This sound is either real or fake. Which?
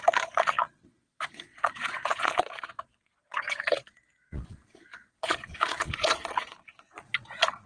fake